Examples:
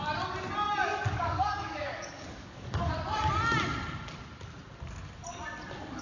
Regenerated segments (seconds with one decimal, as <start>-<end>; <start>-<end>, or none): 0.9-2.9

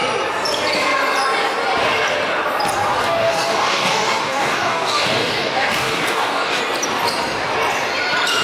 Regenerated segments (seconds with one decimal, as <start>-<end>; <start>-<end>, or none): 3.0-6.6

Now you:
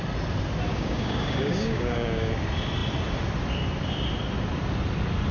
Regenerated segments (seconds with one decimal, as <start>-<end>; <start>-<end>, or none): 0.7-2.3

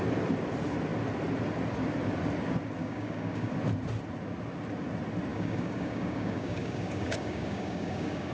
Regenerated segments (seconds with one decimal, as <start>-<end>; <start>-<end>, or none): 2.8-3.5; 5.3-8.3

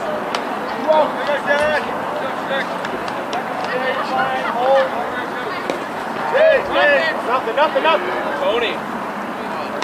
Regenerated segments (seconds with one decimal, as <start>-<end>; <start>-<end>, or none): none

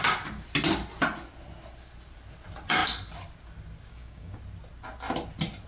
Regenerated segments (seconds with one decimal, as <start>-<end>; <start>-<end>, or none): 3.9-4.4

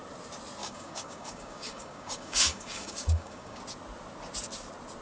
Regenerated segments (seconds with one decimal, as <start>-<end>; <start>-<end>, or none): 0.6-3.6